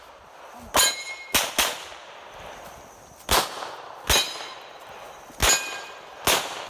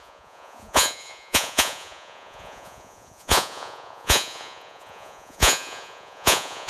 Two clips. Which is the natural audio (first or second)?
first